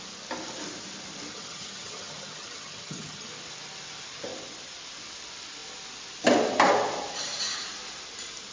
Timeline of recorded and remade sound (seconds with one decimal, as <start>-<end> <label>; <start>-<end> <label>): 0.0-1.3 recorded; 1.3-3.3 remade; 3.3-8.5 recorded